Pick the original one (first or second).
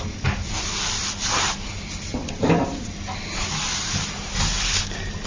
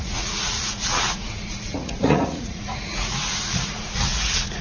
first